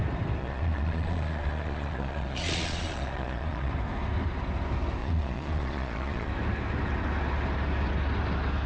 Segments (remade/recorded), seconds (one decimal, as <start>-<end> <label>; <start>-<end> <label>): 0.0-0.4 recorded; 0.4-3.7 remade; 3.7-5.0 recorded; 5.0-6.3 remade; 6.3-8.7 recorded